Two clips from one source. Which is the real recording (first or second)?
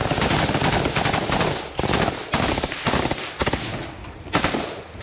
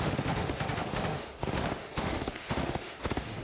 first